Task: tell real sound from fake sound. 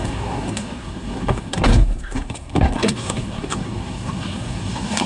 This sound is fake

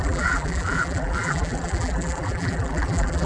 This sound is fake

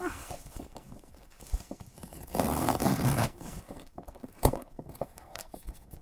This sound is fake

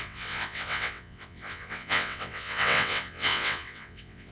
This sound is fake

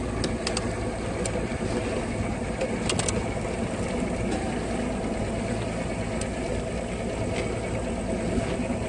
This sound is real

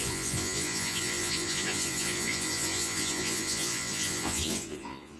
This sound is fake